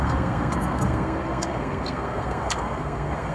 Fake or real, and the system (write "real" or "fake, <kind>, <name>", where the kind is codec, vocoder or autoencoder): fake, codec, SNAC